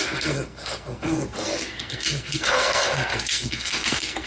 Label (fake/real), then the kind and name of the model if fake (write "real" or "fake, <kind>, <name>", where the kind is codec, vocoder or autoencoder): fake, codec, SNAC